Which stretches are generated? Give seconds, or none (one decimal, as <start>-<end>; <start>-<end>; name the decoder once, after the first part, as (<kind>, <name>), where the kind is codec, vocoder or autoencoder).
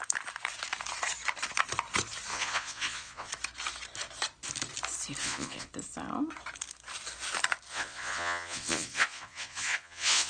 2.3-3.3 (vocoder, Vocos); 5.2-5.7; 7.7-10.3